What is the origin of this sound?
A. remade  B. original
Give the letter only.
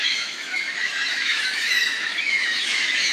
A